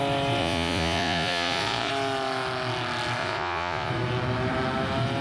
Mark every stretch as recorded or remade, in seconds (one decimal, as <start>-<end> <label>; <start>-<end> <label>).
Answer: 0.0-0.4 recorded; 0.4-1.9 remade; 1.9-3.2 recorded; 3.2-3.9 remade; 3.9-5.2 recorded